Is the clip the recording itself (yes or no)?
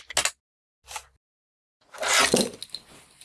yes